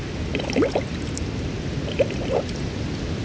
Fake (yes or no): no